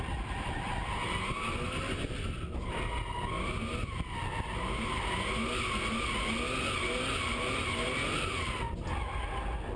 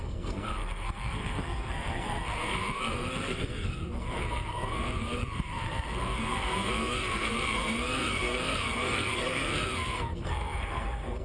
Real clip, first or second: first